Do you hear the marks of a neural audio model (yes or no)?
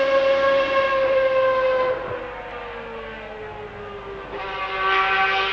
no